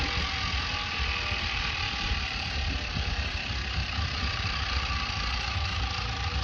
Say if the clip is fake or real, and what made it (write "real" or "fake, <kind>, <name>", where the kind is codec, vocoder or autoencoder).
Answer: real